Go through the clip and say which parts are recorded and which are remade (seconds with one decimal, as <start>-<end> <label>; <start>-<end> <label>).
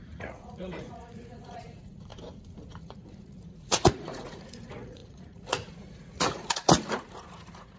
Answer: 0.0-2.1 remade; 2.1-2.8 recorded; 2.8-7.8 remade